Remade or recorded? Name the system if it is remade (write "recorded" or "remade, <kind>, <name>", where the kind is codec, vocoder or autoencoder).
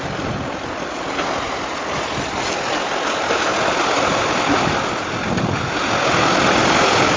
recorded